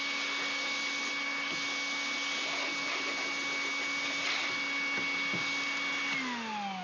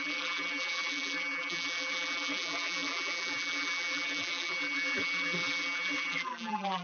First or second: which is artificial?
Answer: second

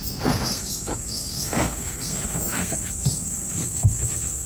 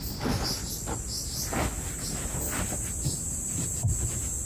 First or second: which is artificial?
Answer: first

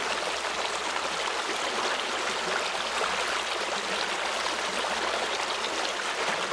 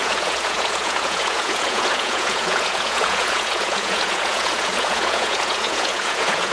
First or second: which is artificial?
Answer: second